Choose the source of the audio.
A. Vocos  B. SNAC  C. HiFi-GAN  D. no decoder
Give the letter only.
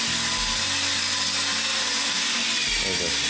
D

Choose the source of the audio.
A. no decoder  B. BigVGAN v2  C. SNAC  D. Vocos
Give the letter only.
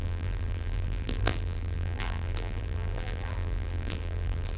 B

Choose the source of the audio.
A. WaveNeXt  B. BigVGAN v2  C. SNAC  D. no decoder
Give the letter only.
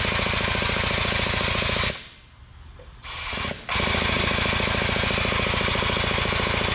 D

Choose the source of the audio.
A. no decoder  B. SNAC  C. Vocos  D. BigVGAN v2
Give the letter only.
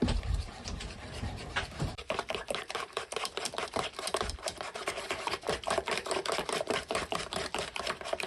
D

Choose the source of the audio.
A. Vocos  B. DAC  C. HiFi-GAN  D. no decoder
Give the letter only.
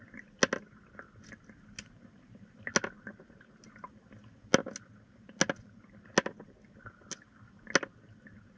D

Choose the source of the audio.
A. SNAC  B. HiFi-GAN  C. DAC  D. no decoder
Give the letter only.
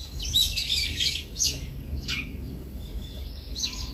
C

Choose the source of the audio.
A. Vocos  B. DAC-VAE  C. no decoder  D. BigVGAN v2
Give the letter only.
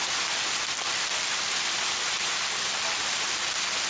C